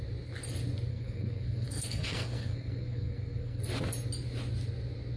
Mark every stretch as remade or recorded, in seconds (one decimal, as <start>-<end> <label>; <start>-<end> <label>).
0.0-0.9 recorded; 0.9-3.6 remade; 3.6-5.2 recorded